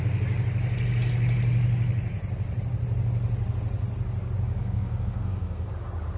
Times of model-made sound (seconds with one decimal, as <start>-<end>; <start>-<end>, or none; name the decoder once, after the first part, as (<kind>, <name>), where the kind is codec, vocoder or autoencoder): 4.6-5.7 (codec, SNAC)